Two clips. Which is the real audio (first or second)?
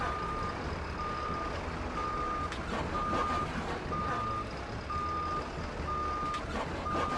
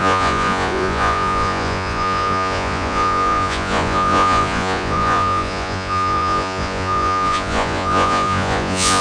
first